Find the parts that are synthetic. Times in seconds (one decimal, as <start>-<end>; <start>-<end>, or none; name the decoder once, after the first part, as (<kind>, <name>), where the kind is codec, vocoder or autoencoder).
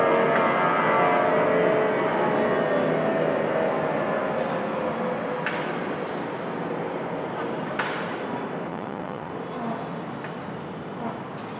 8.7-9.3 (vocoder, Vocos)